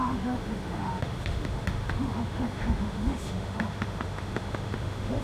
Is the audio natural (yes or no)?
no